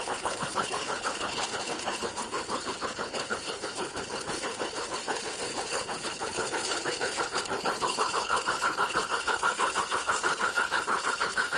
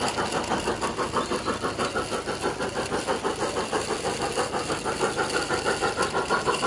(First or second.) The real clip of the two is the second